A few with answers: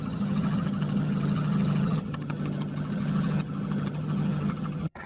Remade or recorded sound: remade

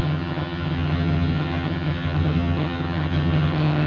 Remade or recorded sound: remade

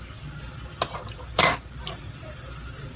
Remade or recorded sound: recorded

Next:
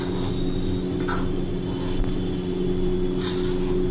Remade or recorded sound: recorded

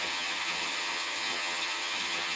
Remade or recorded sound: remade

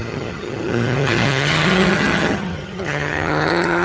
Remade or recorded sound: remade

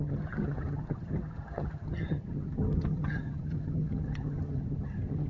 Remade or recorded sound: remade